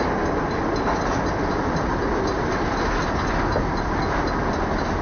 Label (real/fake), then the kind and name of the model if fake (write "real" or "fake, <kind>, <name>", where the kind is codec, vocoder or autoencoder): real